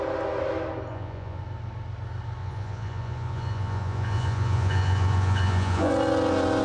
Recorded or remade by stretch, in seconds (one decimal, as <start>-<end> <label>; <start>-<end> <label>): 0.0-0.9 recorded; 0.9-1.4 remade; 1.4-2.4 recorded; 2.4-5.9 remade; 5.9-6.6 recorded